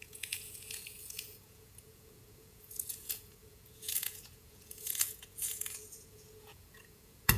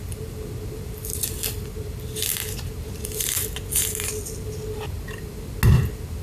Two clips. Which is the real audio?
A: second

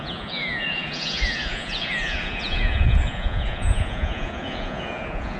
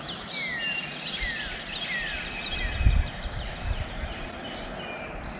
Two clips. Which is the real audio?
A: second